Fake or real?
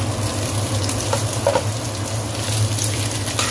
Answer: real